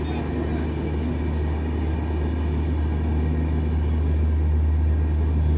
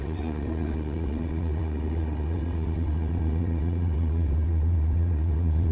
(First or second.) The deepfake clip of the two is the second